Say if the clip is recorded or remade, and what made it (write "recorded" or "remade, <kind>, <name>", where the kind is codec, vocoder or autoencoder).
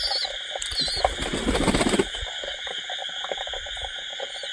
recorded